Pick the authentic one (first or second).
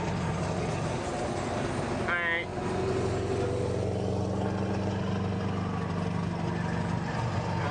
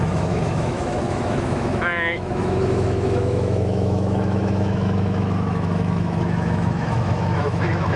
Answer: first